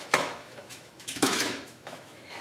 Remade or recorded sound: remade